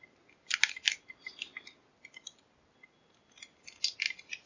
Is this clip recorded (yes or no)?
yes